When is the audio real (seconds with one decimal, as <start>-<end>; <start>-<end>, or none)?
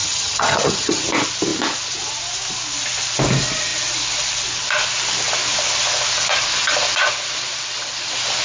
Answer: 1.0-8.4